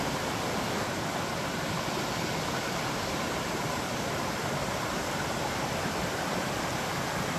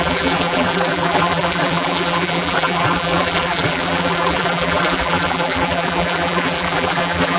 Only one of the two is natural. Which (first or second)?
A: first